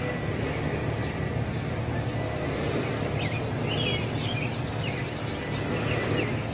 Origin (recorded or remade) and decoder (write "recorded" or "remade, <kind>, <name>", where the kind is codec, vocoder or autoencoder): recorded